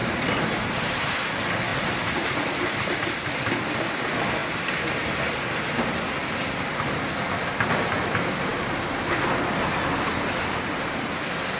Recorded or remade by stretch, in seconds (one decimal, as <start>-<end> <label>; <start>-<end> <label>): 0.0-1.1 remade; 1.1-1.7 recorded; 1.7-3.3 remade; 3.3-11.6 recorded